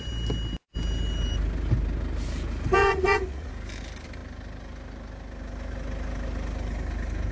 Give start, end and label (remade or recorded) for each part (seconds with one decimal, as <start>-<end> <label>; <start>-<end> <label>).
0.0-2.8 recorded; 2.8-3.5 remade; 3.5-7.3 recorded